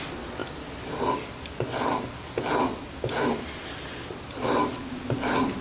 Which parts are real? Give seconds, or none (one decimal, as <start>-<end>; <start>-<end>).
0.0-5.6